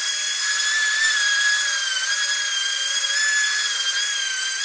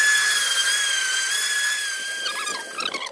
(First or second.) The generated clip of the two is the second